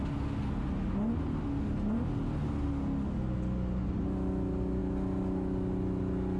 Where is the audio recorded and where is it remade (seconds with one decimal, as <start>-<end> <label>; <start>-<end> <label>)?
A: 0.0-6.4 recorded